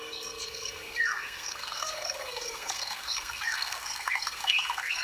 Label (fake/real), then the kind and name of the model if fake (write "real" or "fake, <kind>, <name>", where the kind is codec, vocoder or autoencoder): fake, codec, SNAC